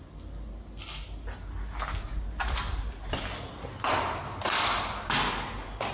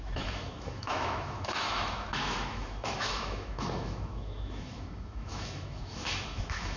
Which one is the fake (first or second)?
second